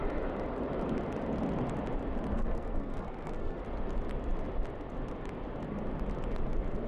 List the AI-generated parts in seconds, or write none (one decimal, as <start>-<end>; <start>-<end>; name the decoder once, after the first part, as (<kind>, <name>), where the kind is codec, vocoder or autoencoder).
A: 2.3-3.6 (codec, SNAC)